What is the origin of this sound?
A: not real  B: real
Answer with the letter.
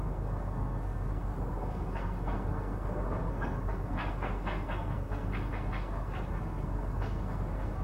A